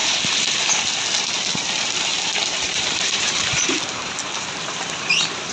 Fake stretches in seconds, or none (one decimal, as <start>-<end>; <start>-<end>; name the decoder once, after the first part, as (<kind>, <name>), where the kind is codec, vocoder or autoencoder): 0.0-0.6 (vocoder, BigVGAN v2); 2.1-5.5